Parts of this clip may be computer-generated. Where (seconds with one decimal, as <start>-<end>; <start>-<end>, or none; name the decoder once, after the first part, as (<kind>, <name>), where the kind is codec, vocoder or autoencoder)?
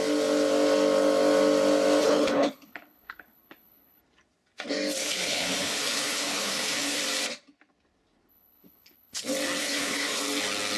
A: 2.0-4.0 (codec, HILCodec); 5.0-7.0; 8.3-9.2; 9.6-10.2